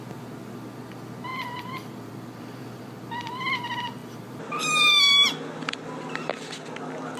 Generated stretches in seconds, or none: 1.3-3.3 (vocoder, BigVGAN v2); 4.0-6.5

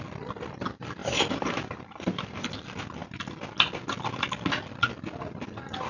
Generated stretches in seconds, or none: 1.0-2.5 (vocoder, BigVGAN v2)

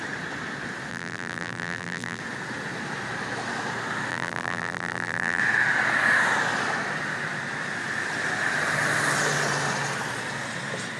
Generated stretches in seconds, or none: 0.9-2.2 (vocoder, BigVGAN v2); 4.1-5.4

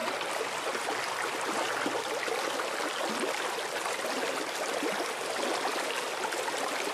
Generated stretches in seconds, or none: none

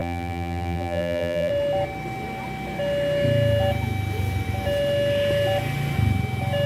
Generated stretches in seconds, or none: 0.0-1.5 (vocoder, BigVGAN v2)

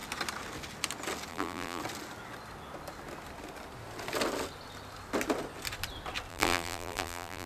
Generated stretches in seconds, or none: 1.3-1.8 (vocoder, BigVGAN v2); 6.3-7.5

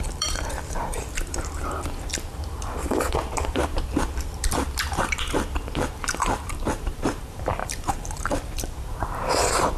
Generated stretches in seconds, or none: 0.0-9.8 (vocoder, BigVGAN v2)

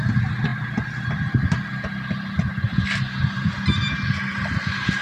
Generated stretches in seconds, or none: 0.5-3.5 (vocoder, BigVGAN v2)